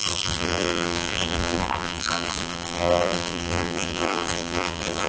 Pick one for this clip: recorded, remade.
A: remade